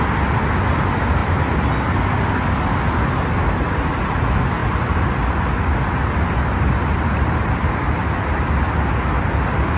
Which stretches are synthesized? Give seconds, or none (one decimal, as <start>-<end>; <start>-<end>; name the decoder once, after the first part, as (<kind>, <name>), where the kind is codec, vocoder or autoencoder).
none